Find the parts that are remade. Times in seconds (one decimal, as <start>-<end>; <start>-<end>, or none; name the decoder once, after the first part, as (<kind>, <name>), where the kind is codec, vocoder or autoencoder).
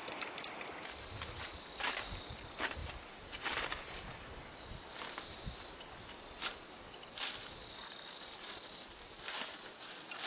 2.8-4.4 (vocoder, BigVGAN v2)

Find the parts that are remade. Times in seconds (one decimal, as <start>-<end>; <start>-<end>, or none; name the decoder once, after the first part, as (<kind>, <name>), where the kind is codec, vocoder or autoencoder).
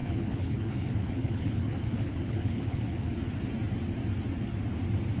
0.0-3.1 (codec, HILCodec)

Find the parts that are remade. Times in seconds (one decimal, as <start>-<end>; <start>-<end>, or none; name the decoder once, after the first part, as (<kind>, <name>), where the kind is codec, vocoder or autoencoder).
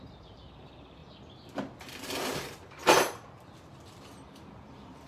0.0-1.0 (vocoder, BigVGAN v2); 1.8-2.8; 3.9-5.1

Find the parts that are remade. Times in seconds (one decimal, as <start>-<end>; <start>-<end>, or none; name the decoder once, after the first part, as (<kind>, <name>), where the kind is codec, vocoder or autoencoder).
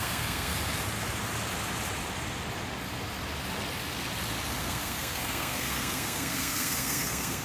0.0-0.5 (codec, SNAC); 4.6-7.4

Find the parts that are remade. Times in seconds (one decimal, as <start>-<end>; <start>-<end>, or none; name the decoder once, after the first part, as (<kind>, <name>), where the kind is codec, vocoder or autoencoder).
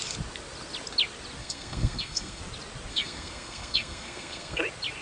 1.4-2.4 (codec, SNAC); 2.9-4.6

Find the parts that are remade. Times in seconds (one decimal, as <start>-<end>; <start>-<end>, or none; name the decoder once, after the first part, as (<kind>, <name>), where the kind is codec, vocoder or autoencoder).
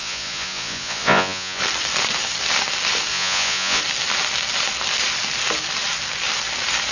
0.0-1.6 (vocoder, Vocos); 3.1-3.8